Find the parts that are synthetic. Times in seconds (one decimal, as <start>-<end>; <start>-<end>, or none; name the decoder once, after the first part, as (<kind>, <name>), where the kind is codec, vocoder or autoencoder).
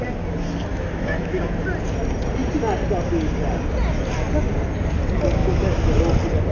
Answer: 0.7-1.4 (autoencoder, DAC-VAE); 5.4-6.0